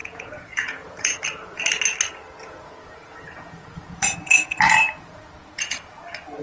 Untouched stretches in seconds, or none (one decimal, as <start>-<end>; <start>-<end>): 1.2-2.4; 6.0-6.4